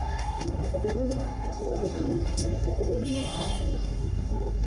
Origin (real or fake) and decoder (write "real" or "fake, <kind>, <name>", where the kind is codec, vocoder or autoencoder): fake, codec, SNAC